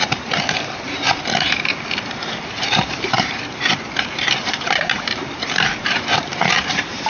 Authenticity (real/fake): fake